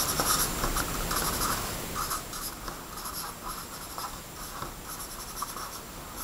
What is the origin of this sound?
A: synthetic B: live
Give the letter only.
B